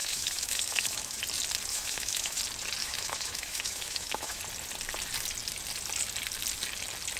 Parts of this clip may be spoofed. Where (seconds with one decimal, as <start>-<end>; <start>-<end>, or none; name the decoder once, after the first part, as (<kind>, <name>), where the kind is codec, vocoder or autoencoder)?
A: 0.0-1.2 (autoencoder, DAC-VAE); 1.7-2.4; 2.8-4.4